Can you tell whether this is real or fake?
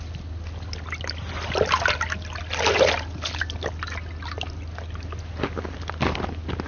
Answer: real